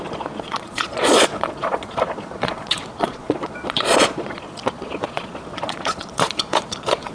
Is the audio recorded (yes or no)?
no